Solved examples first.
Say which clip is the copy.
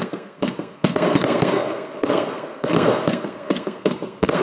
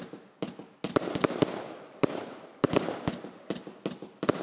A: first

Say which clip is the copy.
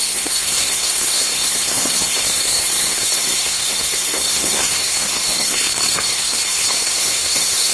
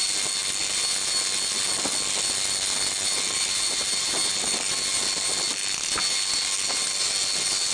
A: first